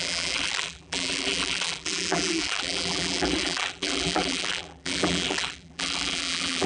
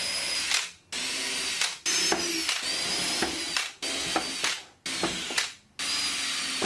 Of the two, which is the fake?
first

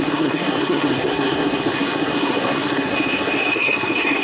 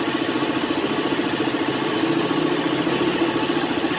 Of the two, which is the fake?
first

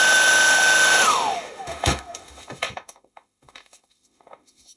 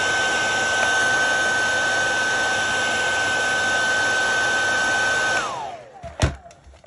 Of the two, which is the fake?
first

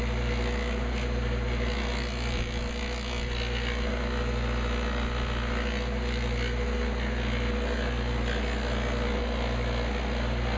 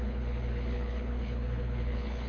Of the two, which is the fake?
second